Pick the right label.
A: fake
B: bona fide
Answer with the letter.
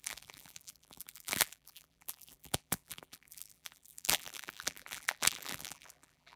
A